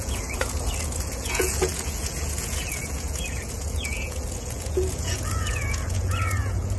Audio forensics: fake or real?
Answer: fake